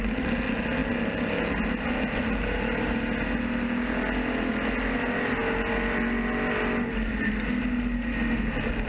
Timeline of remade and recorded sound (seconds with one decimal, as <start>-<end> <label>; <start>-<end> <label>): 0.0-8.9 recorded